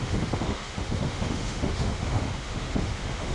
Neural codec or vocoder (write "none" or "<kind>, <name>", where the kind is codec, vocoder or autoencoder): autoencoder, DAC-VAE